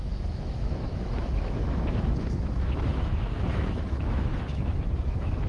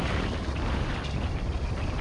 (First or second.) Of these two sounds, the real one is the second